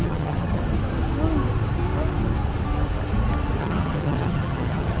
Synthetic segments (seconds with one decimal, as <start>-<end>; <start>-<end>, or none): 0.0-0.6; 3.6-5.0